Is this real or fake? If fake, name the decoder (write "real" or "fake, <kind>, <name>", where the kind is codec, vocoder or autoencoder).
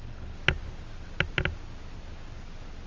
real